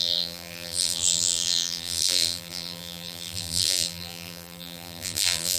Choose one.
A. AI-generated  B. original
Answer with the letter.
A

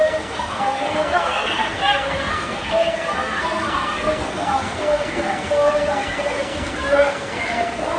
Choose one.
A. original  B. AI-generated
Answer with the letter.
B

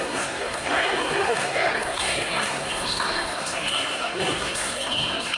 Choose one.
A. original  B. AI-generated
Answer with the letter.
B